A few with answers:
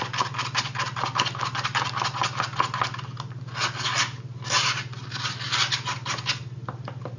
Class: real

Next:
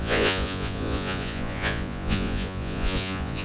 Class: fake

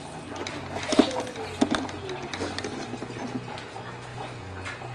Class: real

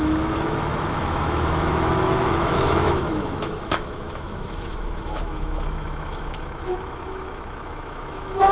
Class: fake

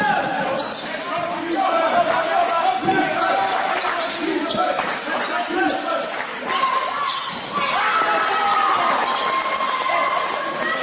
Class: real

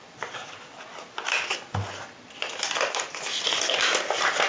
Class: real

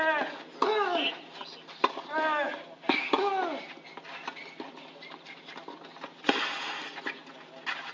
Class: real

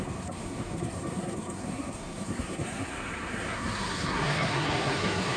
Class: fake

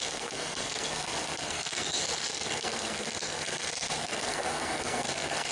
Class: fake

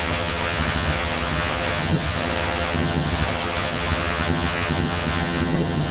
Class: fake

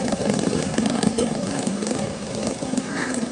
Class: fake